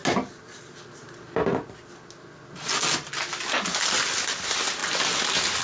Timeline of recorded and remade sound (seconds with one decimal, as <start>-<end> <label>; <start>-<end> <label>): 0.0-5.6 recorded